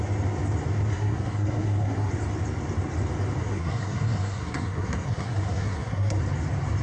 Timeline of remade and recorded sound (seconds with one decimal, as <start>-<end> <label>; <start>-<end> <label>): 0.0-0.9 recorded; 0.9-2.1 remade; 2.1-3.4 recorded; 3.4-6.2 remade; 6.2-6.8 recorded

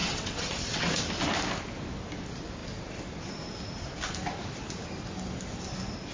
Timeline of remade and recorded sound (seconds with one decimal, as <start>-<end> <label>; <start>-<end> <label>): 0.0-0.9 remade; 0.9-6.1 recorded

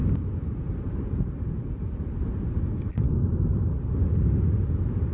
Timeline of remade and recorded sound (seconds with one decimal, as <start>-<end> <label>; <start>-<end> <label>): 0.0-5.1 recorded

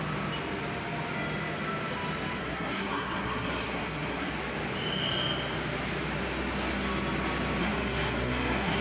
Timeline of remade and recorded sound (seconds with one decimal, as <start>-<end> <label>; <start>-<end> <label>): 0.0-2.4 recorded; 2.4-4.3 remade; 4.3-7.6 recorded; 7.6-8.8 remade

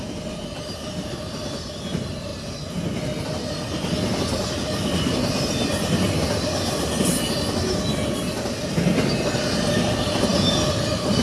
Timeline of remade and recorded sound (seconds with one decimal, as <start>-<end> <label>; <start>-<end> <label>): 0.0-11.2 recorded

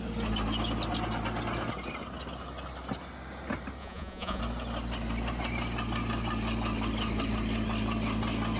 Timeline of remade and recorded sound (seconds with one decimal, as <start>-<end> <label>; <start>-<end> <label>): 0.0-3.8 recorded; 3.8-4.4 remade; 4.4-8.6 recorded

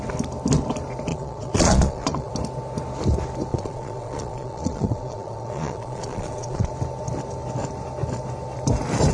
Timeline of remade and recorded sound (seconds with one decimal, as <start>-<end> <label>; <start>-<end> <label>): 0.0-1.1 recorded; 1.1-2.3 remade; 2.3-3.5 recorded; 3.5-6.7 remade; 6.7-9.1 recorded

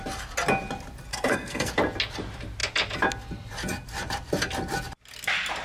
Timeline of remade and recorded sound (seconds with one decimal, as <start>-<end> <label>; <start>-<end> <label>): 0.0-1.1 recorded; 1.1-1.7 remade; 1.7-5.6 recorded